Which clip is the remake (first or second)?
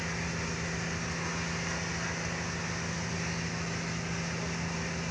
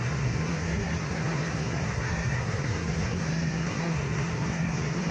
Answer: second